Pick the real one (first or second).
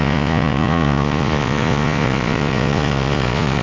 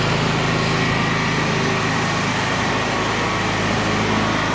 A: second